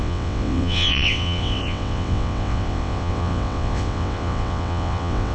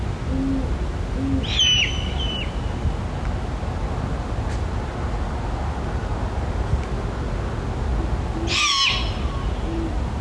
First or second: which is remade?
first